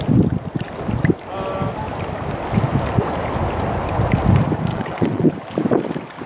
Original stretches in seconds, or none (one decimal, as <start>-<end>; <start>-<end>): 0.0-4.7; 5.3-6.3